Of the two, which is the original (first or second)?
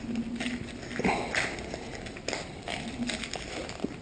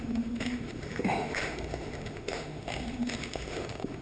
first